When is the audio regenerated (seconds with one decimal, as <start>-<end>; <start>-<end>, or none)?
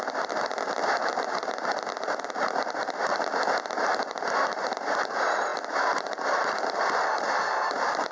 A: none